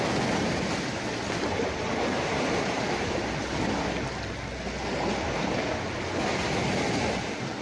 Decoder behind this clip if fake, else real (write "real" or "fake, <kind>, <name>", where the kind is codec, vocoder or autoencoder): real